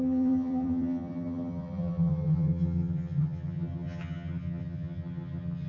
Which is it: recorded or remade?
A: remade